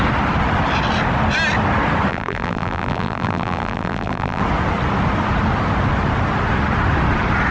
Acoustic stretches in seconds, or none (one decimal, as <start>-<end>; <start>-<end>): 0.0-2.1; 4.4-7.5